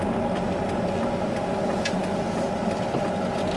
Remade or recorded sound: recorded